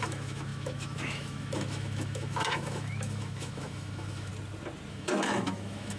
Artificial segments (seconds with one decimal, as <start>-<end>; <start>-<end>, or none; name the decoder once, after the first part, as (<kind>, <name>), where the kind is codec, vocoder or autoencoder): 0.0-4.3 (autoencoder, DAC-VAE); 4.9-6.0